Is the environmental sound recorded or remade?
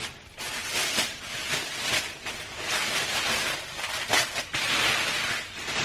recorded